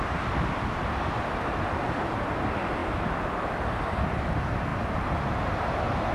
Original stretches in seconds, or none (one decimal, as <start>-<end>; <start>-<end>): 0.0-6.1